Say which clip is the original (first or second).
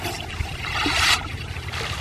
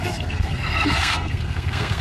first